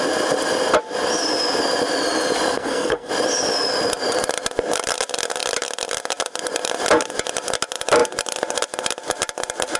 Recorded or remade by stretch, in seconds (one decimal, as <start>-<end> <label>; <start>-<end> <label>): 0.0-2.5 recorded; 2.5-3.1 remade; 3.1-9.8 recorded